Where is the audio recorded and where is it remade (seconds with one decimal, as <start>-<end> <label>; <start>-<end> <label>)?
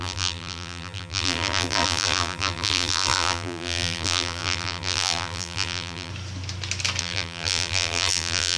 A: 0.0-6.1 remade; 6.1-7.0 recorded; 7.0-8.6 remade